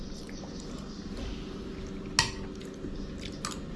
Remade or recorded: recorded